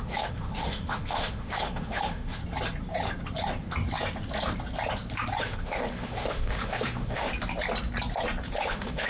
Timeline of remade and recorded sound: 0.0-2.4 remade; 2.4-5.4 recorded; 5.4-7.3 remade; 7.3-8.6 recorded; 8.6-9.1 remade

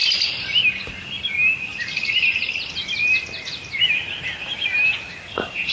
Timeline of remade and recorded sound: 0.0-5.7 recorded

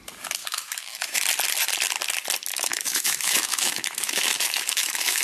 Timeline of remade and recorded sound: 0.0-0.4 recorded; 0.4-1.2 remade; 1.2-2.5 recorded; 2.5-5.2 remade

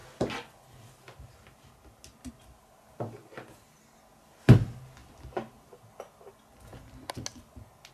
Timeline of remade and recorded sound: 0.0-7.9 recorded

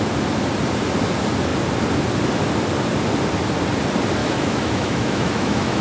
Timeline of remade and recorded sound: 0.0-4.2 recorded; 4.2-5.8 remade

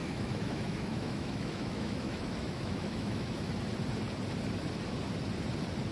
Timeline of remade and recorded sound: 0.0-3.5 remade; 3.5-5.9 recorded

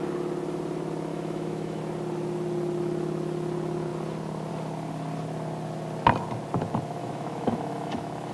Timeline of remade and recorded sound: 0.0-1.1 recorded; 1.1-1.8 remade; 1.8-7.0 recorded; 7.0-8.3 remade

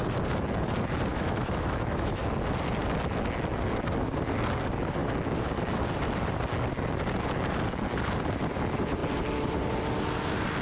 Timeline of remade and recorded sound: 0.0-1.1 recorded; 1.1-2.2 remade; 2.2-10.6 recorded